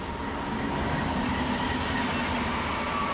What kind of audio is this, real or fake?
real